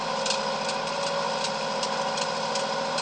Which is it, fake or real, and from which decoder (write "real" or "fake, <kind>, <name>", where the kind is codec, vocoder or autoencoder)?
real